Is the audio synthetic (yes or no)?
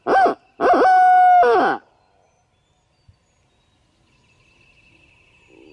no